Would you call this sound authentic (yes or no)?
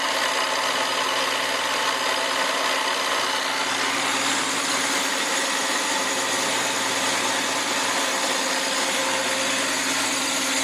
yes